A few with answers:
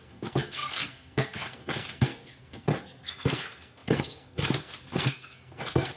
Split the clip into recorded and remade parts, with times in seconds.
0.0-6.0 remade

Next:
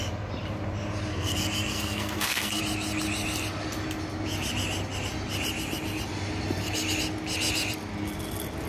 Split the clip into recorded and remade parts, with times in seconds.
0.0-1.1 recorded; 1.1-2.6 remade; 2.6-8.7 recorded

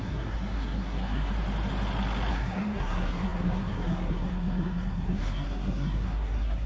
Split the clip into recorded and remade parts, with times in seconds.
0.0-1.3 remade; 1.3-2.3 recorded; 2.3-6.7 remade

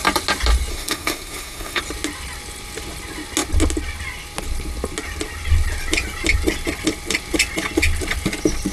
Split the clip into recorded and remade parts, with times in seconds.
0.0-0.7 recorded; 0.7-1.8 remade; 1.8-8.7 recorded

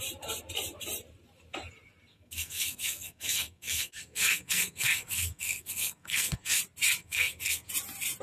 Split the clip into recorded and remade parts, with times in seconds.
0.0-2.1 recorded; 2.1-6.6 remade; 6.6-7.0 recorded; 7.0-7.7 remade; 7.7-8.2 recorded

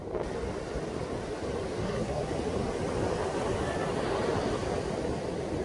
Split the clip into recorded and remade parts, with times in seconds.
0.0-1.8 recorded; 1.8-2.3 remade; 2.3-5.6 recorded

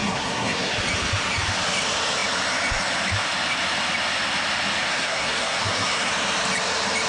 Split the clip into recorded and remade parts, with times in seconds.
0.0-0.7 remade; 0.7-4.9 recorded; 4.9-6.1 remade; 6.1-7.1 recorded

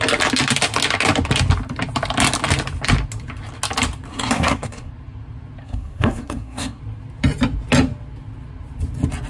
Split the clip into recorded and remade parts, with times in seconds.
0.0-4.1 recorded; 4.1-4.9 remade; 4.9-5.6 recorded; 5.6-6.8 remade; 6.8-9.3 recorded